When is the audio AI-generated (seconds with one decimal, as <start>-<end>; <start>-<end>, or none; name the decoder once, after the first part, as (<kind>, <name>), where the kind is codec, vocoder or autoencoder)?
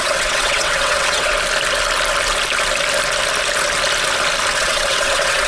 0.0-1.3 (vocoder, WaveNeXt); 4.6-5.5